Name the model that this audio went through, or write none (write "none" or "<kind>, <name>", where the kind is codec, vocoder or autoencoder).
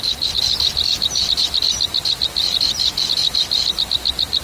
none